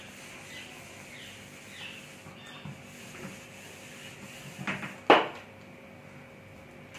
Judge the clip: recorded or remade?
recorded